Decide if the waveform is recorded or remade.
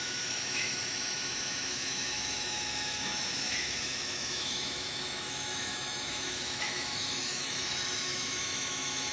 remade